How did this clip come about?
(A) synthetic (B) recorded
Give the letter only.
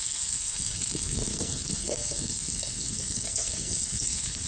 A